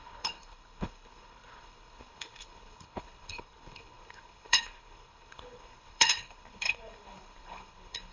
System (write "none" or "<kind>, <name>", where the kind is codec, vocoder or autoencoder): codec, HILCodec